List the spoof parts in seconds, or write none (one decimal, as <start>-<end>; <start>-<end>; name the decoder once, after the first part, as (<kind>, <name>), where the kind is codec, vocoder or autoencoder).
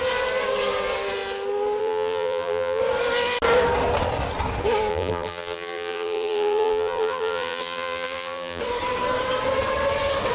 1.8-2.8 (vocoder, BigVGAN v2); 4.9-8.6